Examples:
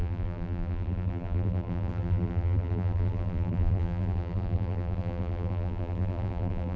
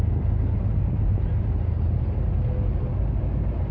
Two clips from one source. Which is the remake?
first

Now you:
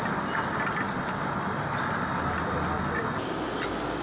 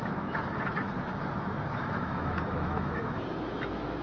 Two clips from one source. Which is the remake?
second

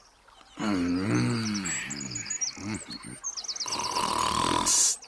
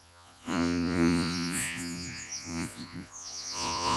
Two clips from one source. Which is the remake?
second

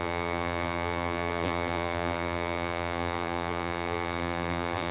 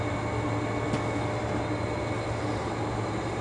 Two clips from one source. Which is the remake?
first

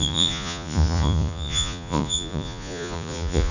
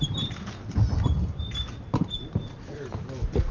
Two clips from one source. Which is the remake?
first